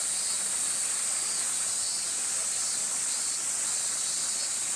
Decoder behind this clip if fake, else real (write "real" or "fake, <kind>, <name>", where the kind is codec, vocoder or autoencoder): real